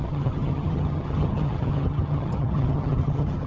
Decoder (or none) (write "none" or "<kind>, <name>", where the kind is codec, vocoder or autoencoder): vocoder, HiFi-GAN